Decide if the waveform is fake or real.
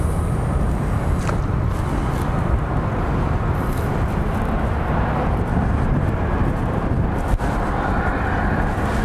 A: real